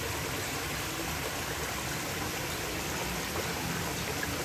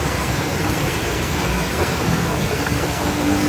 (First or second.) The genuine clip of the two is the first